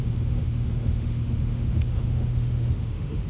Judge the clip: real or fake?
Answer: fake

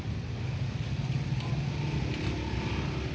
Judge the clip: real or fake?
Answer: real